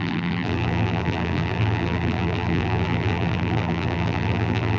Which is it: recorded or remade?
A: remade